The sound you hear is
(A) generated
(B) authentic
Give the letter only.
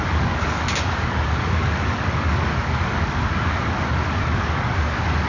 A